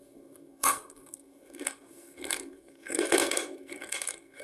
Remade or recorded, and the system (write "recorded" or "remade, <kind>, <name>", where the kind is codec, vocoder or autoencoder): remade, codec, SNAC